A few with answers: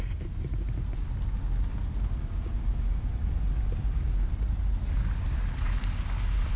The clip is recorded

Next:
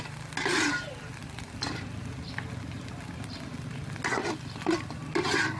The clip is recorded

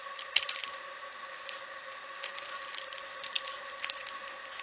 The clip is recorded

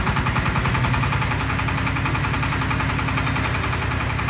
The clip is recorded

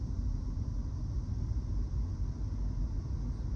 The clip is recorded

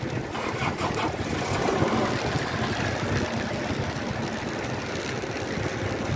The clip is recorded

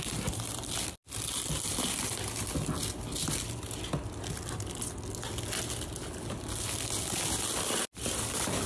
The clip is recorded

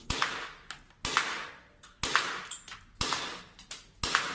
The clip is recorded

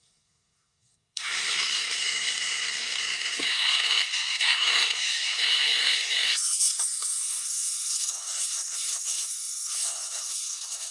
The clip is remade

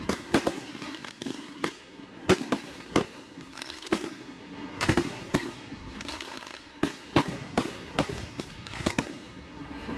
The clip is remade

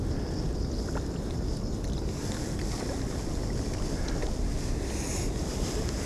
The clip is recorded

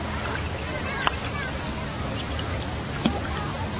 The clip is recorded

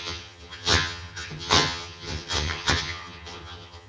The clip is remade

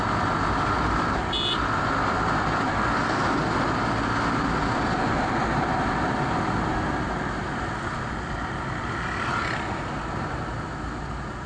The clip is recorded